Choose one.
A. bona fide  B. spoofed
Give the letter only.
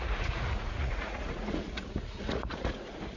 B